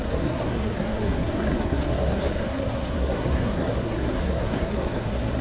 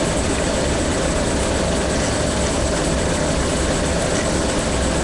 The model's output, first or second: first